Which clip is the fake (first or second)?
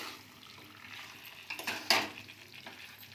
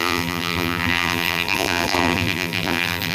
second